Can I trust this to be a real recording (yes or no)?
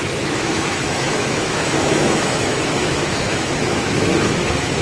no